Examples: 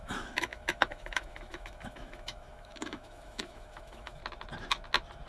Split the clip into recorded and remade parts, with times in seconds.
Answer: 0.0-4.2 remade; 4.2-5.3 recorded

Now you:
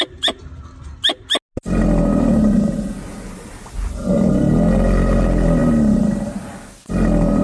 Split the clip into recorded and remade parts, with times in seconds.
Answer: 0.0-7.4 recorded

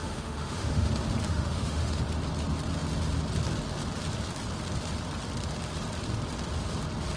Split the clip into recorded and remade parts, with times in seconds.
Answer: 0.0-0.9 remade; 0.9-1.3 recorded; 1.3-2.0 remade; 2.0-7.2 recorded